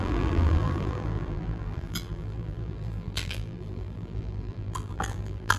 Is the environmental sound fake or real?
fake